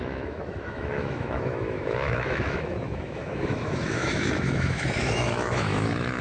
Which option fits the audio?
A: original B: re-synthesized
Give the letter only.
B